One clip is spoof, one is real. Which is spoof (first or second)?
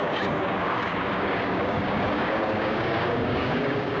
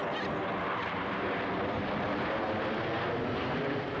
first